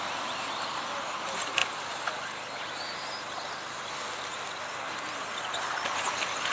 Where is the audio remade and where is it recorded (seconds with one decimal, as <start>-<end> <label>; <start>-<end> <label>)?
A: 0.0-6.5 recorded